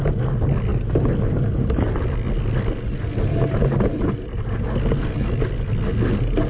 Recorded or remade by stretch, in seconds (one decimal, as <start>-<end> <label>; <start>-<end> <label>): 0.0-3.3 recorded; 3.3-4.1 remade; 4.1-6.5 recorded

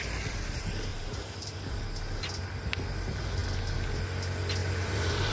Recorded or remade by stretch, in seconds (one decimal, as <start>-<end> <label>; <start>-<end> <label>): 0.0-0.9 recorded; 0.9-1.6 remade; 1.6-4.6 recorded; 4.6-5.3 remade